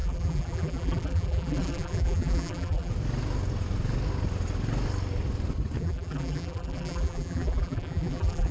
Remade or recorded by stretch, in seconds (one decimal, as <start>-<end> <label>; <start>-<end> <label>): 0.0-2.9 remade; 2.9-5.8 recorded; 5.8-8.5 remade